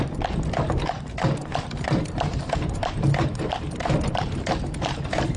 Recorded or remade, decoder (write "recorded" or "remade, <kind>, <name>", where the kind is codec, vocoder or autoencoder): remade, vocoder, BigVGAN v2